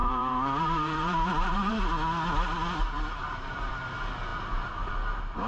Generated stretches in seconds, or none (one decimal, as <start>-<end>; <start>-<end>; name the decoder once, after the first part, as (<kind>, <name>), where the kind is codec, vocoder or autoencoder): 0.0-1.7 (vocoder, BigVGAN v2); 3.2-3.7